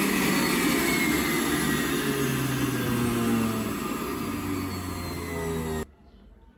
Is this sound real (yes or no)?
yes